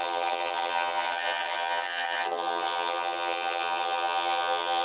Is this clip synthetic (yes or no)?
yes